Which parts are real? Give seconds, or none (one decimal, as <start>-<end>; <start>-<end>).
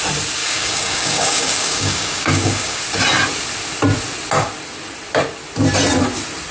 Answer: 0.0-0.4; 2.8-6.5